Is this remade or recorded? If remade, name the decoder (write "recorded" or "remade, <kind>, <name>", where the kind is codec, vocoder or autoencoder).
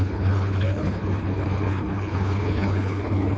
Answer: remade, codec, HILCodec